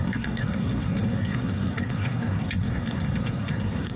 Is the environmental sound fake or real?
fake